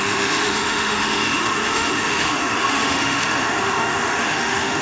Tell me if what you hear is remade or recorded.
remade